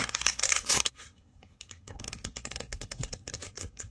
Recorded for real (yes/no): no